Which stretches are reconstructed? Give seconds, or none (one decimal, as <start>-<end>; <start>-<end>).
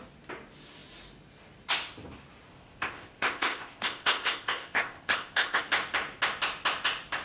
2.5-5.6